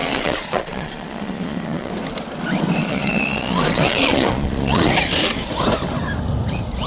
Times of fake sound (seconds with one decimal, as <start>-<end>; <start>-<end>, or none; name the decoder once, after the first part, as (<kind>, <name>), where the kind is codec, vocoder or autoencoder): 0.0-1.9 (vocoder, Vocos); 2.8-4.9